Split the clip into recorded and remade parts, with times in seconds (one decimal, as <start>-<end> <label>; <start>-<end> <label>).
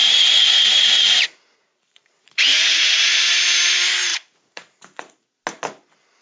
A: 0.0-3.0 remade; 3.0-4.1 recorded; 4.1-5.4 remade; 5.4-6.2 recorded